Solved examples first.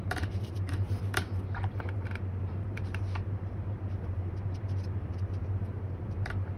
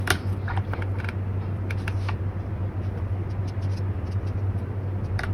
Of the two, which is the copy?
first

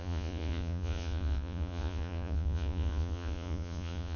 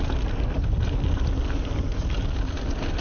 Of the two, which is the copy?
first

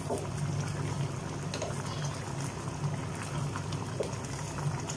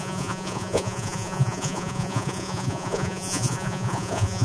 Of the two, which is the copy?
second